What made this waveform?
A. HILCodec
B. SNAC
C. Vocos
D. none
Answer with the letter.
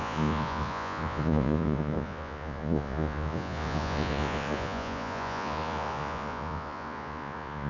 C